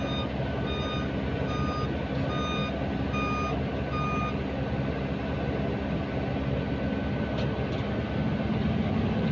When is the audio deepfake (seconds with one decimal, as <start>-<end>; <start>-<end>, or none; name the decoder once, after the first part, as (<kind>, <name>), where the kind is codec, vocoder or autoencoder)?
none